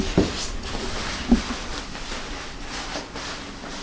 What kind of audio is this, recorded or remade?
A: recorded